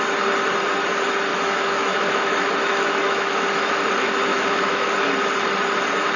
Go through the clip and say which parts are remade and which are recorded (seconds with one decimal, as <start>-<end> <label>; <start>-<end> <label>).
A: 0.0-1.3 recorded; 1.3-3.9 remade; 3.9-4.3 recorded; 4.3-4.9 remade; 4.9-6.2 recorded